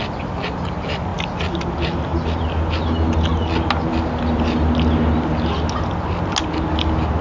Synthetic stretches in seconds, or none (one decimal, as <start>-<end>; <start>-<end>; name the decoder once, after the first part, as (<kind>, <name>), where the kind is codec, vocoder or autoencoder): none

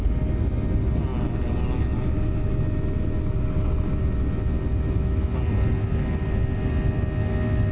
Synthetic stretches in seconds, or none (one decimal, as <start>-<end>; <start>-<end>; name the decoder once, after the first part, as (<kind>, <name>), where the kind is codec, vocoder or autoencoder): none

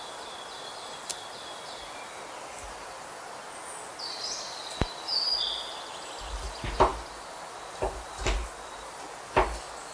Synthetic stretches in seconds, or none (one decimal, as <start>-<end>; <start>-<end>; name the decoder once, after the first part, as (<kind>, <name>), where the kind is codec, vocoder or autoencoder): none

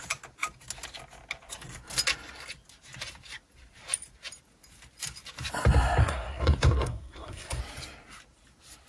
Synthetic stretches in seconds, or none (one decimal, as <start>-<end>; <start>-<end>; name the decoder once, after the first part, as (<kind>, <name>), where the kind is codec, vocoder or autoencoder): 6.0-7.6 (codec, SNAC)